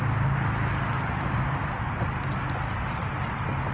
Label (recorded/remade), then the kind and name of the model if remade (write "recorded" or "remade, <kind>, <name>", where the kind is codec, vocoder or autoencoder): recorded